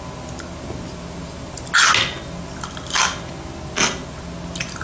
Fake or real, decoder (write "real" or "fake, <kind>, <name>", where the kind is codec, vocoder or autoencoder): real